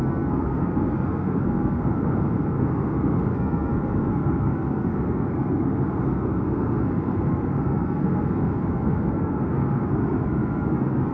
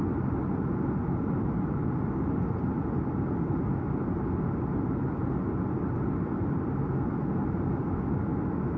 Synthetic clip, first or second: first